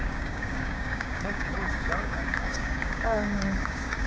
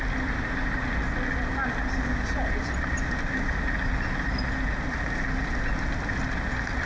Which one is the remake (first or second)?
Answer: first